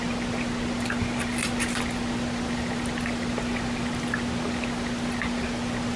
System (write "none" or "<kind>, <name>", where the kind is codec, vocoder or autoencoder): none